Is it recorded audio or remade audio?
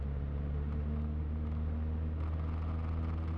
recorded